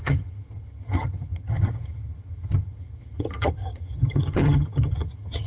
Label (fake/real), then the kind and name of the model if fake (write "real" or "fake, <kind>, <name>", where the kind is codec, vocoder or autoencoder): fake, vocoder, HiFi-GAN